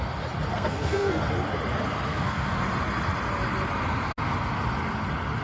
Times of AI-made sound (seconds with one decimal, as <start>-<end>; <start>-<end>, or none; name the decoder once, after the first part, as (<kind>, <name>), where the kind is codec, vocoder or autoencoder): 0.5-1.2 (codec, SNAC); 2.1-2.6